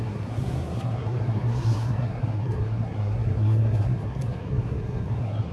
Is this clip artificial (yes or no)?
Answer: yes